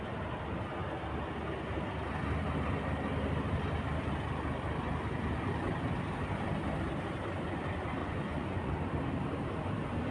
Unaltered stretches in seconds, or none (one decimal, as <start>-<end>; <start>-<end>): 0.0-8.0; 8.7-10.1